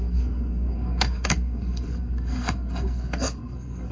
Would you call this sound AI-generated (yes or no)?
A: yes